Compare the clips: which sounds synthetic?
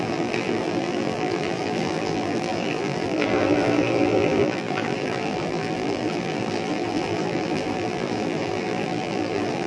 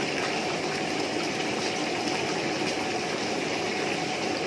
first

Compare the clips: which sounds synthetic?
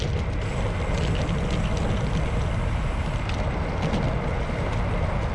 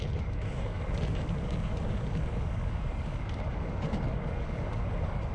second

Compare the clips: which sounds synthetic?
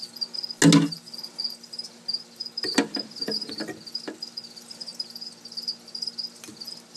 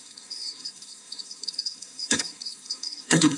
second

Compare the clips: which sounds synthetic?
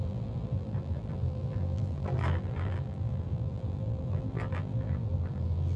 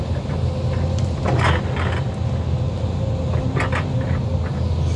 first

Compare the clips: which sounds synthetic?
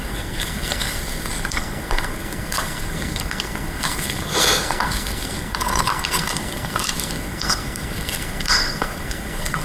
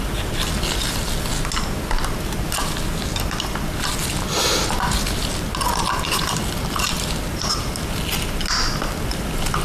first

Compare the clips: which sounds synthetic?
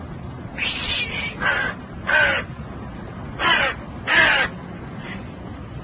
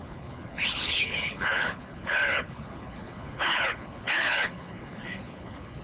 second